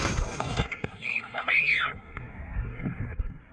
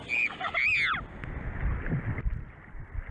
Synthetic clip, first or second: first